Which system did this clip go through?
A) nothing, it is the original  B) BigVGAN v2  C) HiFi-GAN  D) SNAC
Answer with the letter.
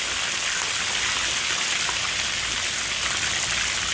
A